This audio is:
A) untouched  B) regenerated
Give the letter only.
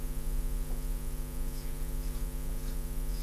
B